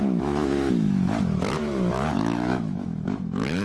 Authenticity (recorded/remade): remade